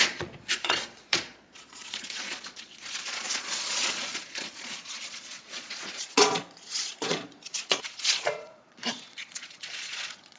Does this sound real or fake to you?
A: fake